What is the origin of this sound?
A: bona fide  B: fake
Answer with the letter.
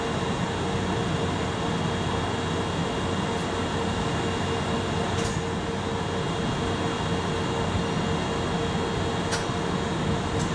A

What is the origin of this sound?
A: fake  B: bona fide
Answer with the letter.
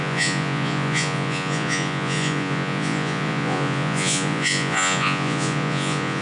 A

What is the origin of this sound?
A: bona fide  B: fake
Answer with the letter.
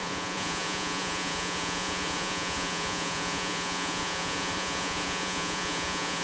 B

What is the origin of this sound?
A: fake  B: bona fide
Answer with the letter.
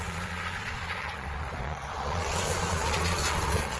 A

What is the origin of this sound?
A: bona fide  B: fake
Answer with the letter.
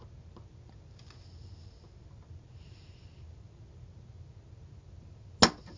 A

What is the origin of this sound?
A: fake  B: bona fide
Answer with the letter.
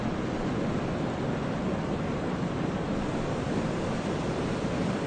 B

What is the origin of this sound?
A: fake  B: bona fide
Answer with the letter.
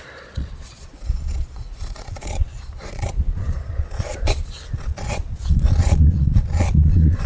A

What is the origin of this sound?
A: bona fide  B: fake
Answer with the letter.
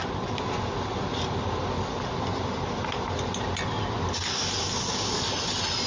A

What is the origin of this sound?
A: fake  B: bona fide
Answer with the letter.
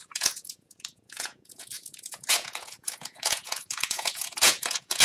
A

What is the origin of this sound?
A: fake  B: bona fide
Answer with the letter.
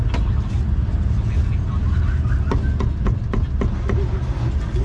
B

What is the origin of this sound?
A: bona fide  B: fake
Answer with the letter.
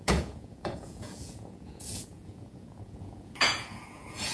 B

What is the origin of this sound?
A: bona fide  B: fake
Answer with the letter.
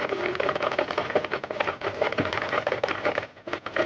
A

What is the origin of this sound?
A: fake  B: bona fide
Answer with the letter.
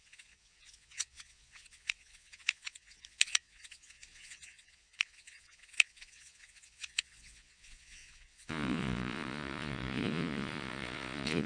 A